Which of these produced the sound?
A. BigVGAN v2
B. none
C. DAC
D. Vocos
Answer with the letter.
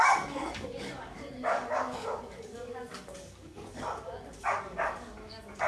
C